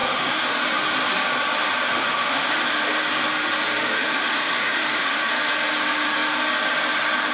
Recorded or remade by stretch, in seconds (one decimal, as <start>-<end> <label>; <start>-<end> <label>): 0.0-0.6 remade; 0.6-2.0 recorded; 2.0-2.5 remade; 2.5-3.8 recorded; 3.8-5.3 remade; 5.3-7.3 recorded